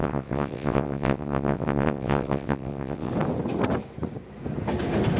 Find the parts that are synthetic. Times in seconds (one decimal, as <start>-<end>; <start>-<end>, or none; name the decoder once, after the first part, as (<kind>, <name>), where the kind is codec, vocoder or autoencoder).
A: 0.0-3.1 (vocoder, WaveNeXt)